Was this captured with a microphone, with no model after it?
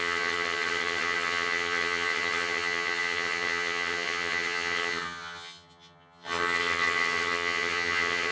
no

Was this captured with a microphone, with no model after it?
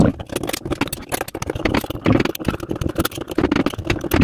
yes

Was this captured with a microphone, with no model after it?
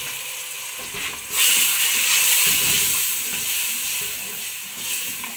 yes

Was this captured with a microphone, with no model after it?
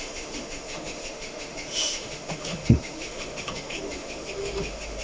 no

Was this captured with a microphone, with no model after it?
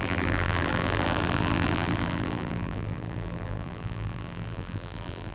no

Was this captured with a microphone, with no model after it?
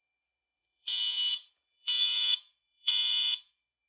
no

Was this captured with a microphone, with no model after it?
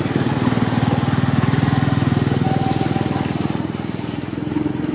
yes